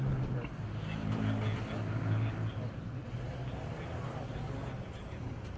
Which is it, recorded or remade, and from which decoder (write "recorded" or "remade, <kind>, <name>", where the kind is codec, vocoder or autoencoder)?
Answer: recorded